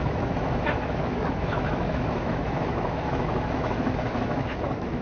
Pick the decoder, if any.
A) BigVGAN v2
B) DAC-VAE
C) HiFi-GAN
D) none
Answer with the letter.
B